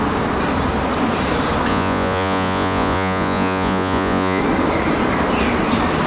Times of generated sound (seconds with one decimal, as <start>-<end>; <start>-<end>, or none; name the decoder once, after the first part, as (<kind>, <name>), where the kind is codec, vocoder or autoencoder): 1.7-4.4 (vocoder, Vocos)